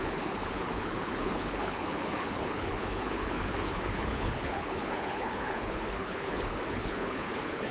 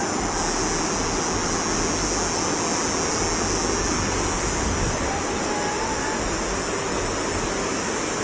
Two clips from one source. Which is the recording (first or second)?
second